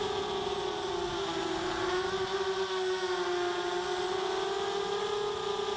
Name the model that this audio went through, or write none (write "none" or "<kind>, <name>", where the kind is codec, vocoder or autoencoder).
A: none